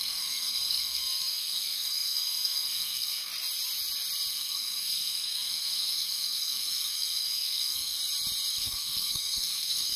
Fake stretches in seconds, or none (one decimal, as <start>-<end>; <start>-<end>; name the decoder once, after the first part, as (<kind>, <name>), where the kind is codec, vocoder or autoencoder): 0.0-3.3 (codec, SNAC); 4.3-8.0; 8.5-10.0